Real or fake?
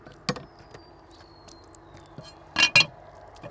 real